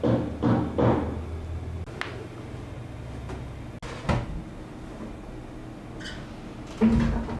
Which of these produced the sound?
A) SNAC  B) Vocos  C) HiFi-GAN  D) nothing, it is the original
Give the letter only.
D